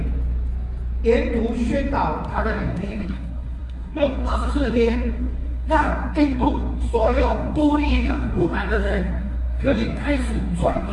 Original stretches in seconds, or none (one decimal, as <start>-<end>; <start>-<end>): 0.0-2.3